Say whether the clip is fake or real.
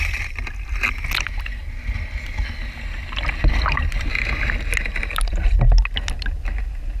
real